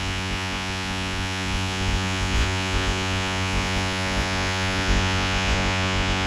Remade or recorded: remade